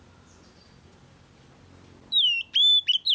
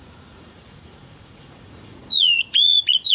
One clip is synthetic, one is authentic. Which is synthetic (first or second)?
second